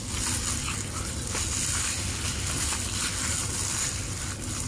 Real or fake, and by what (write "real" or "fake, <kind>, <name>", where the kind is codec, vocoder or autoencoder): real